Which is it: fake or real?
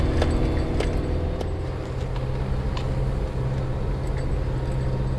real